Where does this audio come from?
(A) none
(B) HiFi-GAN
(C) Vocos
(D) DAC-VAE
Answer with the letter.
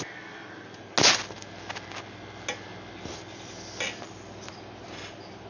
A